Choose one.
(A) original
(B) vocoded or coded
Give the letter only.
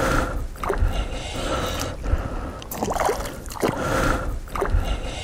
A